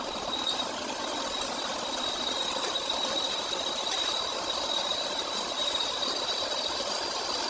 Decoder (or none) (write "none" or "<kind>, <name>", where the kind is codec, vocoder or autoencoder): none